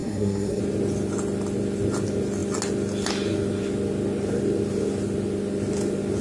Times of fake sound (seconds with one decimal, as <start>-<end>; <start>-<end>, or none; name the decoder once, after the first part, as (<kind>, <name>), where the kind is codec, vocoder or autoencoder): 0.0-0.6 (codec, SNAC)